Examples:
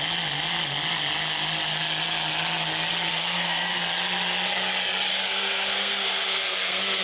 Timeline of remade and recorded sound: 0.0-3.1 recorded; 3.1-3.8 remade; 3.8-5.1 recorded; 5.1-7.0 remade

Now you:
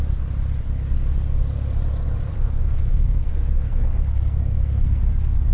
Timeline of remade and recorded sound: 0.0-2.3 recorded; 2.3-5.0 remade; 5.0-5.5 recorded

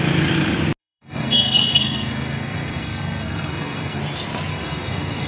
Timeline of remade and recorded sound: 0.0-0.8 recorded; 0.8-4.0 remade; 4.0-4.5 recorded; 4.5-5.3 remade

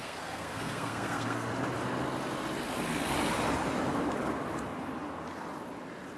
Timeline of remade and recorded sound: 0.0-1.5 remade; 1.5-6.2 recorded